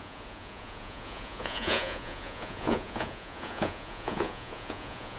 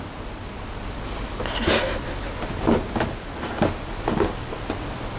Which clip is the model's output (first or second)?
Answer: first